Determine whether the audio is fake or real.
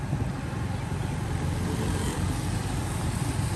real